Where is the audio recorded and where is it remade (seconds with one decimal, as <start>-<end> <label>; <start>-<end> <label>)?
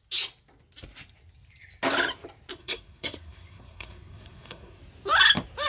0.0-2.6 recorded; 2.6-4.8 remade; 4.8-5.7 recorded